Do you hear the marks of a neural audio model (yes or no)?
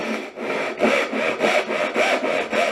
no